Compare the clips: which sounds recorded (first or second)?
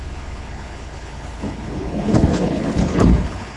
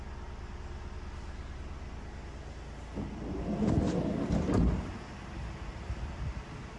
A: second